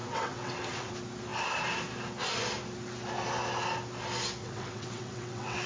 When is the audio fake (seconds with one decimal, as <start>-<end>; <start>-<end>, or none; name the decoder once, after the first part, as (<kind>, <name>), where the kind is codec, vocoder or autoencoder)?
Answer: 0.0-0.9 (vocoder, WaveNeXt); 4.4-5.7